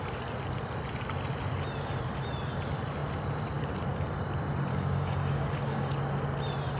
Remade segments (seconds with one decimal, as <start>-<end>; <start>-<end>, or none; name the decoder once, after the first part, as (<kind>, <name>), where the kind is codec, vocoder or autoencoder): 4.7-5.9 (codec, DAC)